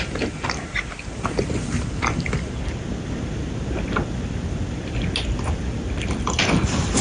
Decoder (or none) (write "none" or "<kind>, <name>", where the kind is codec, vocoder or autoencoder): none